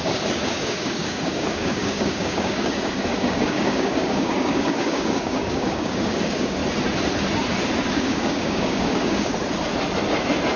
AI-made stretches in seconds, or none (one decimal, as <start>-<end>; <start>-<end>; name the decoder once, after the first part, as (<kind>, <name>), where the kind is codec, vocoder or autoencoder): 0.0-6.6 (codec, DAC); 7.9-9.3